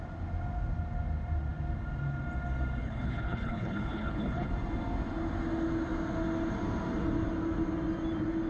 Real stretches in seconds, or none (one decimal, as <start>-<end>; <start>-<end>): 0.0-2.8; 4.5-8.5